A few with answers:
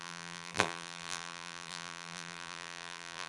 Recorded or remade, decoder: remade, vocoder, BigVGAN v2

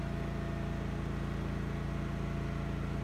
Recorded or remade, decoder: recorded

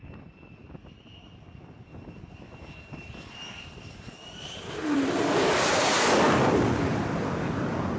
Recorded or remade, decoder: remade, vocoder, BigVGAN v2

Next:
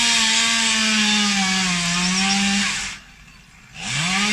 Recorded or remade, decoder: recorded